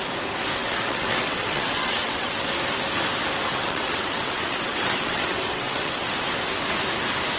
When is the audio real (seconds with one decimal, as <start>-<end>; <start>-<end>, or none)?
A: 0.0-0.6; 2.5-3.5; 6.1-7.4